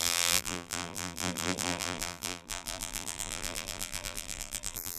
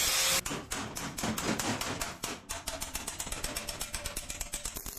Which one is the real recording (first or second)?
second